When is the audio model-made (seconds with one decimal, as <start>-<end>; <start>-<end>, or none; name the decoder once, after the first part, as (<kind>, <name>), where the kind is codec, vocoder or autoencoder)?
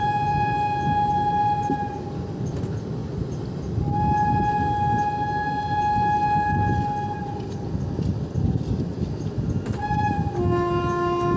none